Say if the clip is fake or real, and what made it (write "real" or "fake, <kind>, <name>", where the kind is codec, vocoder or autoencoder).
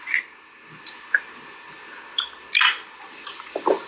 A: real